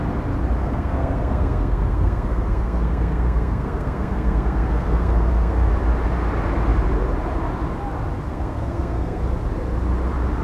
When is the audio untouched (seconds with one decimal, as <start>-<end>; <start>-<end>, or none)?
0.0-0.6; 5.7-8.3; 9.2-10.4